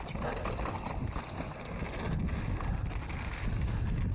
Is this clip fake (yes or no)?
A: no